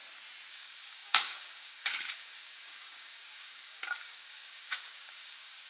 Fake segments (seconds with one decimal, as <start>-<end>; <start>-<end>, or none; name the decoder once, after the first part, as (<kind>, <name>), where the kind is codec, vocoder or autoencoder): 0.5-5.7 (codec, DAC)